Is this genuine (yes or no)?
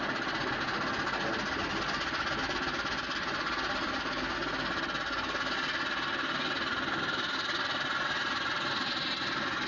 yes